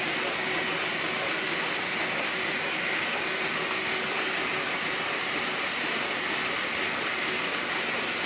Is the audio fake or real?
real